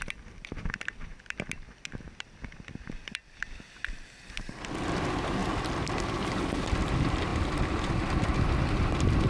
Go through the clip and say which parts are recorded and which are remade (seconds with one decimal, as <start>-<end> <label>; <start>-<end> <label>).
0.0-1.1 recorded; 1.1-4.7 remade; 4.7-5.4 recorded; 5.4-6.2 remade; 6.2-7.3 recorded; 7.3-9.3 remade